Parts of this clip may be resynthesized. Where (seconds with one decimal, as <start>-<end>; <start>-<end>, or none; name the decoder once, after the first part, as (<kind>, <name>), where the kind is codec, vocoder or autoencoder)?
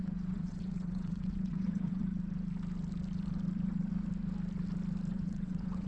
0.0-2.0 (vocoder, WaveNeXt); 5.1-5.9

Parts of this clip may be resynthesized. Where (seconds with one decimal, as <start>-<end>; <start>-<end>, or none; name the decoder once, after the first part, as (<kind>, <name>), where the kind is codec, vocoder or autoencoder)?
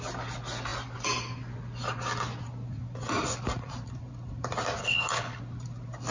4.8-5.4 (codec, HILCodec)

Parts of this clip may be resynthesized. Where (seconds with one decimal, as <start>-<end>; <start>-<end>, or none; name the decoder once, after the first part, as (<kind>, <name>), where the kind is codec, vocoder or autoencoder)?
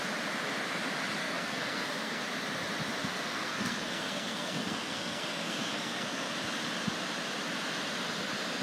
1.2-2.2 (codec, SNAC); 3.0-6.3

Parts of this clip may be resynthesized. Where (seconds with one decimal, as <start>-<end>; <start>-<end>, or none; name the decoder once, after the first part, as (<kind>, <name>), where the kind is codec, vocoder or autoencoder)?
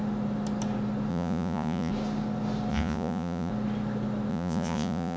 1.1-1.9 (vocoder, Vocos); 2.7-3.5; 4.3-5.2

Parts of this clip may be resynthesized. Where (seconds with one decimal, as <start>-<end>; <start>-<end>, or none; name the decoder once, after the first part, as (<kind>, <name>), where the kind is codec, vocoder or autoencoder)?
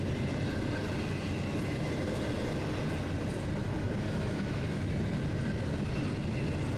3.6-4.8 (autoencoder, DAC-VAE)